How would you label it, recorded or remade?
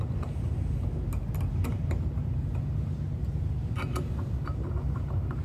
recorded